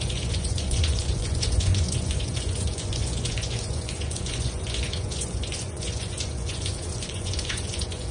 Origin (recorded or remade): remade